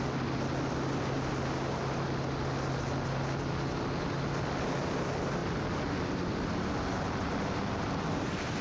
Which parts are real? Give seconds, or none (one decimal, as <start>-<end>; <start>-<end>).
0.0-8.6